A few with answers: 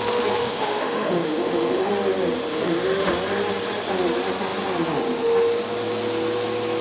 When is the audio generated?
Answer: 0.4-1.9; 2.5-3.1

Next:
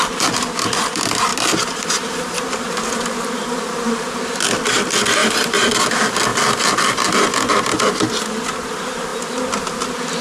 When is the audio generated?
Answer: 1.3-4.4; 5.2-5.8

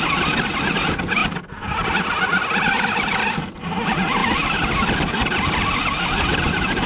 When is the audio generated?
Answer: none

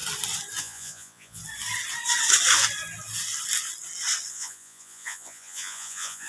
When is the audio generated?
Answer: 0.6-1.4; 4.3-6.3